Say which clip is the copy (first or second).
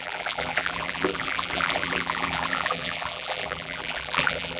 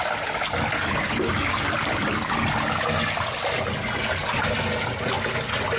first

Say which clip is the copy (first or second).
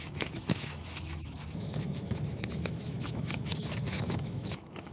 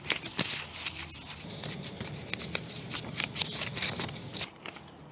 first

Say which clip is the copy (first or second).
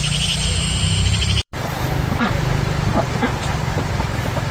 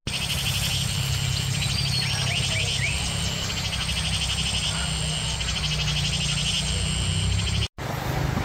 first